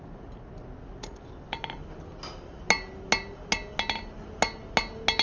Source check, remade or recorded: recorded